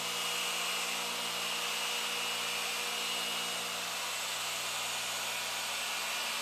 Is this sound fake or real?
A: real